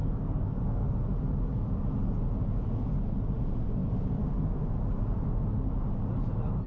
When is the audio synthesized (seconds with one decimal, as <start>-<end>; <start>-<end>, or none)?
0.0-0.9